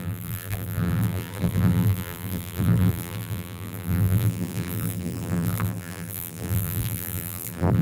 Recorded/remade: remade